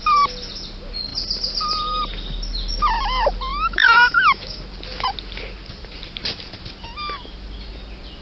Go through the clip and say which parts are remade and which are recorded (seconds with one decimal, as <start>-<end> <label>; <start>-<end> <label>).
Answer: 0.0-3.5 recorded; 3.5-4.6 remade; 4.6-8.2 recorded

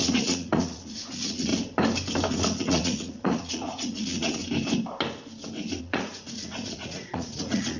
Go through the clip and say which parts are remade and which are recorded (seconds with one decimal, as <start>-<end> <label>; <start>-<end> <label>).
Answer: 0.0-1.5 remade; 1.5-2.3 recorded; 2.3-4.4 remade; 4.4-5.8 recorded; 5.8-7.8 remade

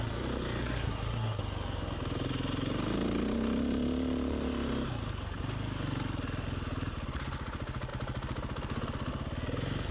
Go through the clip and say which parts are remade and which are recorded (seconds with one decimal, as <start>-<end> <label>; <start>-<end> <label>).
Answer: 0.0-0.6 recorded; 0.6-1.4 remade; 1.4-9.9 recorded

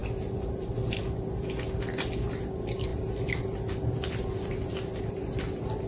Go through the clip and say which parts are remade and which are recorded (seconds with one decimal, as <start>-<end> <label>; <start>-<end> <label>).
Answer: 0.0-5.9 recorded

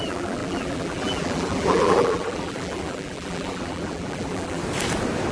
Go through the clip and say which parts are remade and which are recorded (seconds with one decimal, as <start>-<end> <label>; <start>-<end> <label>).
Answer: 0.0-4.6 remade; 4.6-5.3 recorded

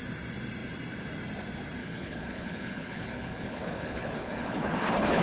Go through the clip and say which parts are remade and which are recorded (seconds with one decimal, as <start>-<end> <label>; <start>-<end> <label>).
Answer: 0.0-1.8 recorded; 1.8-5.2 remade

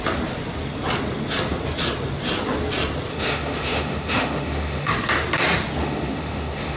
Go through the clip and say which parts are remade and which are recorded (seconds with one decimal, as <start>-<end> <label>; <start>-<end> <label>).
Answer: 0.0-3.1 recorded; 3.1-4.9 remade; 4.9-5.8 recorded; 5.8-6.8 remade

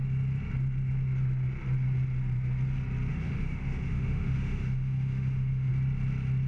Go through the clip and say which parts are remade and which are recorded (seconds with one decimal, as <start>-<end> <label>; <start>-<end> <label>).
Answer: 0.0-3.1 recorded; 3.1-5.7 remade; 5.7-6.5 recorded